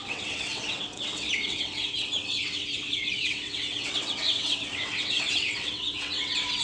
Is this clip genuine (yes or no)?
no